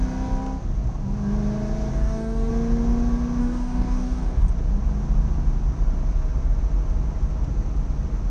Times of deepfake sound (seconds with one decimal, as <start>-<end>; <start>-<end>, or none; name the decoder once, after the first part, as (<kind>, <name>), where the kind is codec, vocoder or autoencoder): 1.9-2.5 (codec, DAC); 3.4-4.5